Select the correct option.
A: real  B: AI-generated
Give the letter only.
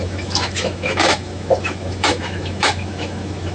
B